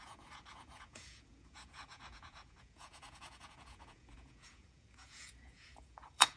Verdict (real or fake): fake